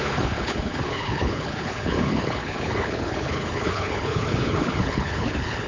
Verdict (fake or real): fake